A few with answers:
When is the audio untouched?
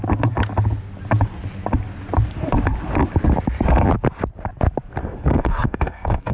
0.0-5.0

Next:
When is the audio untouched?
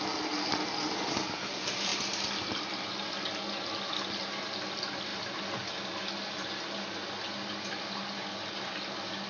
0.0-9.3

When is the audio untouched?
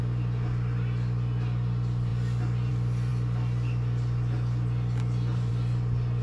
0.0-6.2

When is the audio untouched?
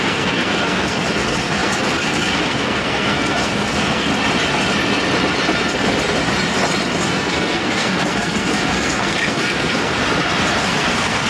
4.1-7.1; 10.0-10.6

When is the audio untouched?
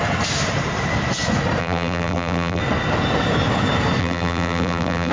0.0-1.6; 2.6-4.0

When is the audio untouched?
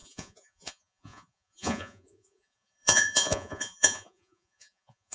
none